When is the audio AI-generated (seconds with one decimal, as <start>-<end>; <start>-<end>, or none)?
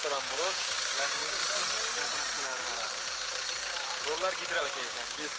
0.0-1.4; 4.6-5.4